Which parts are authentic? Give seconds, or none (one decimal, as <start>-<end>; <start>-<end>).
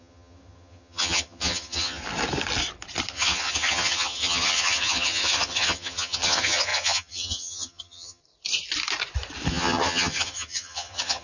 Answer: 2.0-3.1; 8.2-9.5